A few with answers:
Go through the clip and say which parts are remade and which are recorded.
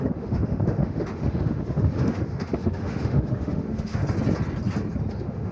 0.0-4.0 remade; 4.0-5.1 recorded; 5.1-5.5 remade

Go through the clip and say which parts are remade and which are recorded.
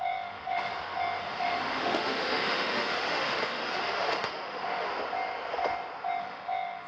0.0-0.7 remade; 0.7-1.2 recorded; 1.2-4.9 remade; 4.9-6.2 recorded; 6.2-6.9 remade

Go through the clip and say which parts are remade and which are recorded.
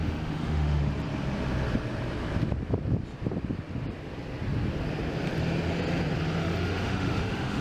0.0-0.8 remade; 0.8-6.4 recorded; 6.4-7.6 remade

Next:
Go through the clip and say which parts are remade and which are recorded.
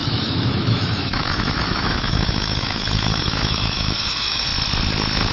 0.0-4.5 remade; 4.5-5.3 recorded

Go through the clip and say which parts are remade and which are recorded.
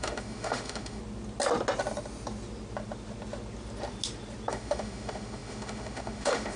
0.0-1.0 remade; 1.0-4.5 recorded; 4.5-6.6 remade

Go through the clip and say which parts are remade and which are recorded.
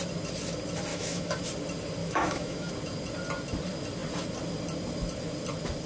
0.0-0.9 recorded; 0.9-1.4 remade; 1.4-2.0 recorded; 2.0-2.7 remade; 2.7-5.9 recorded